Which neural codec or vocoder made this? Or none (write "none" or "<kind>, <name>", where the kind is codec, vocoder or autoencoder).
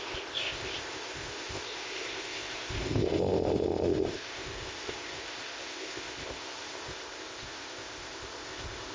codec, ZipCodec